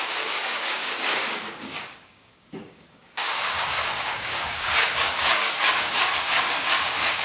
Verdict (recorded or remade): remade